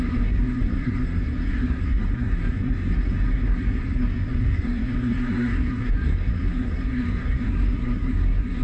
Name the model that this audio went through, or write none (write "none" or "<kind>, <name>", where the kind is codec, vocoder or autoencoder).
codec, SNAC